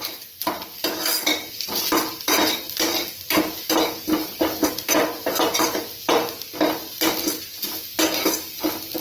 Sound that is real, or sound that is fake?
real